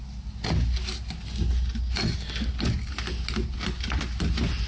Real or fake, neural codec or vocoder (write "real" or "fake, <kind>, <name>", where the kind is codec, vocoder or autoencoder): real